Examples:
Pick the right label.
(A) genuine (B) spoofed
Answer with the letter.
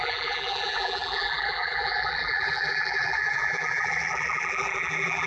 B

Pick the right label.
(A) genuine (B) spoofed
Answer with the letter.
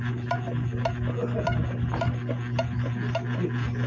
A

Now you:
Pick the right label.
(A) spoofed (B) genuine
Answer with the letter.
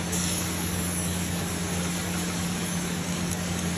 A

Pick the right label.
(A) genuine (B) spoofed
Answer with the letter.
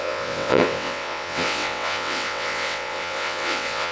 B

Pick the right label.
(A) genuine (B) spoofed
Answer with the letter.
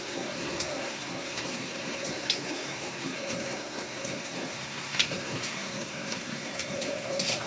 B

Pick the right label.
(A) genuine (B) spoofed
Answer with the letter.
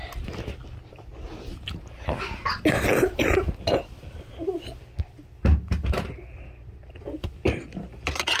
A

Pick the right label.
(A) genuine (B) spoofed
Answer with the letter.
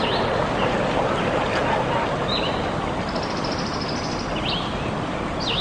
A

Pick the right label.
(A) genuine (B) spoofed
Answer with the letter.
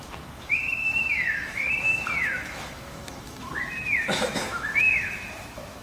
B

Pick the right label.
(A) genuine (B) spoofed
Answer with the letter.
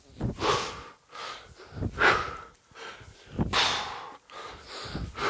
A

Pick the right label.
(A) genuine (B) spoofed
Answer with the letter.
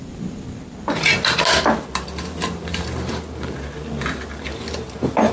A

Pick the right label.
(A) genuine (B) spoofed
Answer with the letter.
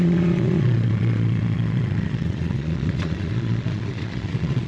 B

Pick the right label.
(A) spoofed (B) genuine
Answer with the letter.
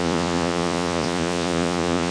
A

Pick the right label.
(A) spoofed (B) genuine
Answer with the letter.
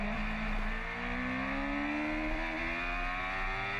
B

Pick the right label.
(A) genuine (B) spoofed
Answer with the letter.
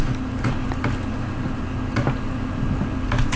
A